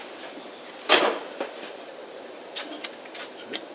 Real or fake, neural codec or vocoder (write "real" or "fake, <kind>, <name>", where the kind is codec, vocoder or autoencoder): fake, vocoder, BigVGAN v2